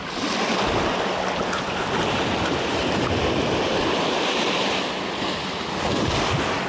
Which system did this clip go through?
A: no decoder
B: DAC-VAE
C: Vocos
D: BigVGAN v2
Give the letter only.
A